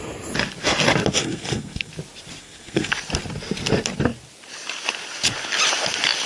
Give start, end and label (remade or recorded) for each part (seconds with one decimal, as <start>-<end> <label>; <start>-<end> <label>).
0.0-1.2 recorded; 1.2-1.9 remade; 1.9-2.4 recorded; 2.4-2.9 remade; 2.9-6.3 recorded